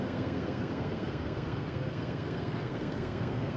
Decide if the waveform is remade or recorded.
remade